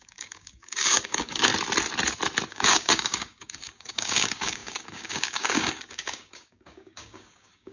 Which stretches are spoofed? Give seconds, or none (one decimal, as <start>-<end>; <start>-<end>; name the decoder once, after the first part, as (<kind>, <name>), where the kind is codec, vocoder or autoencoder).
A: 0.0-1.5 (codec, DAC); 2.5-7.7

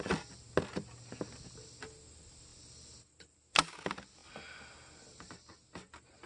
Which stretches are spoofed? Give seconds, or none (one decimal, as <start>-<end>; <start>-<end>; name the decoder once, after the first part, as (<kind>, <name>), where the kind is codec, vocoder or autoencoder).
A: none

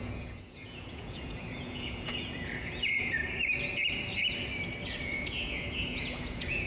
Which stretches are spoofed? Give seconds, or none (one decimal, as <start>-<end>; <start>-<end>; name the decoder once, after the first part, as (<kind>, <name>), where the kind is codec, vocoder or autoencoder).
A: 0.0-3.2 (vocoder, Vocos); 5.0-6.7

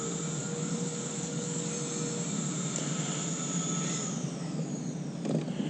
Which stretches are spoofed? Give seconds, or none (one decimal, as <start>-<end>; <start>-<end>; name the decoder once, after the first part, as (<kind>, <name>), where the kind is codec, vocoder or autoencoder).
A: 0.4-1.7 (codec, DAC)

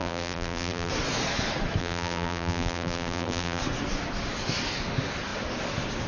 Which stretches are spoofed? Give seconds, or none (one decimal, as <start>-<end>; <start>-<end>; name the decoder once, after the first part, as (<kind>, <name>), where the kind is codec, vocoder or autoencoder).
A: 0.0-0.9 (vocoder, BigVGAN v2); 1.8-3.6

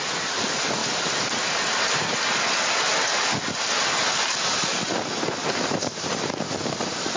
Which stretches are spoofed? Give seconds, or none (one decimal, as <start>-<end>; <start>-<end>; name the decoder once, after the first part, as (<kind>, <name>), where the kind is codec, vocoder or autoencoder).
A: none